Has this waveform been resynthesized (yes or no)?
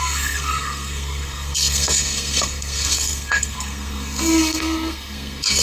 yes